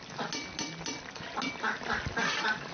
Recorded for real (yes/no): yes